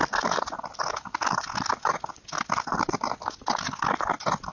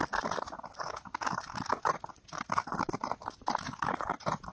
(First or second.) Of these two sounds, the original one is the first